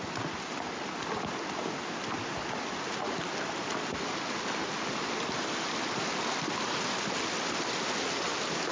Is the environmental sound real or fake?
real